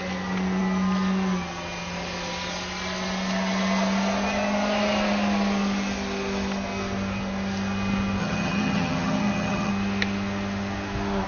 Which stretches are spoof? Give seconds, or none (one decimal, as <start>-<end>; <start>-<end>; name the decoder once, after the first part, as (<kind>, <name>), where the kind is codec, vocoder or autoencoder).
8.2-9.7 (vocoder, HiFi-GAN)